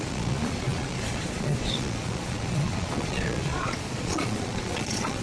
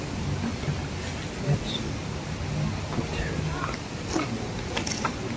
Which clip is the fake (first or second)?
first